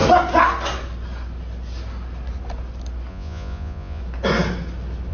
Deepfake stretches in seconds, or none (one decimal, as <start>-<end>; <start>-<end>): 3.1-4.0